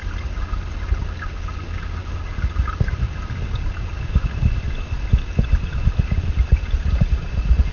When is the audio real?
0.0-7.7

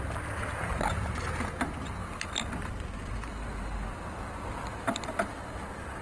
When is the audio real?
0.0-2.0; 3.1-4.7

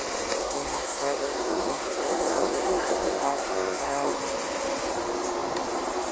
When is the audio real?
0.0-0.4; 4.1-6.1

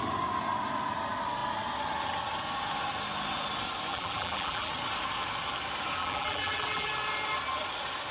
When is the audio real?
0.0-3.9; 4.7-6.0; 6.9-8.1

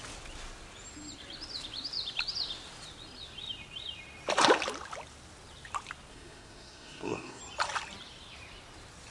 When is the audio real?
0.0-6.1; 7.4-9.1

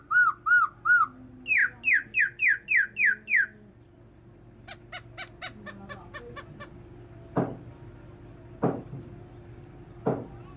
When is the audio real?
0.0-10.6

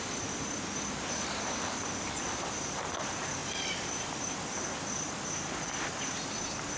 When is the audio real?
0.0-6.8

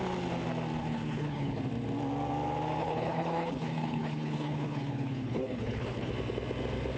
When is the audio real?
0.0-0.8; 1.6-2.8; 6.1-7.0